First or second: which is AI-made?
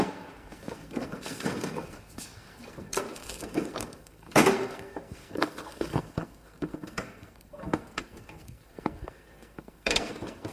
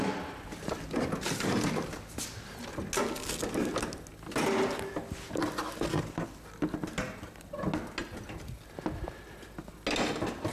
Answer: first